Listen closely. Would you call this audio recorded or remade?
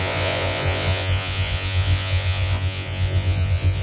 remade